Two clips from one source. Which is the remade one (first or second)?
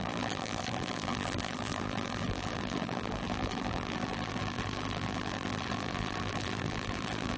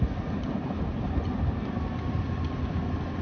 first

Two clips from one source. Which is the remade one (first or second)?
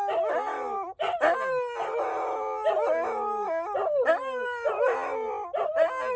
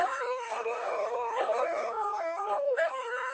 second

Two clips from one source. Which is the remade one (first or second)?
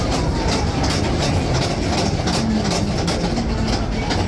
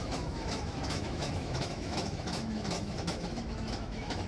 second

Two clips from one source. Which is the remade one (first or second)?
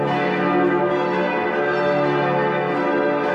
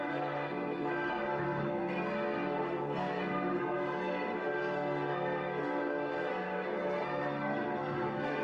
second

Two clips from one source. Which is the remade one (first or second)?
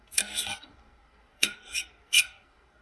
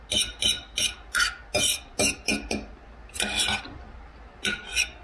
first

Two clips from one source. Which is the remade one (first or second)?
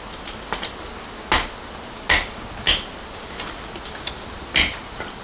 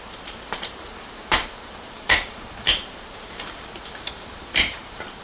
second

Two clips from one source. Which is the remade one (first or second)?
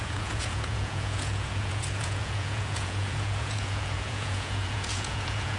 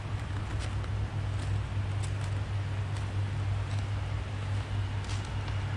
first